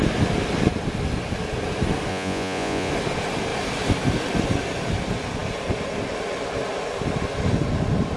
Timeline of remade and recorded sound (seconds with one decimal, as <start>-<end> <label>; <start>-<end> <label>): 0.0-2.1 recorded; 2.1-2.9 remade; 2.9-8.2 recorded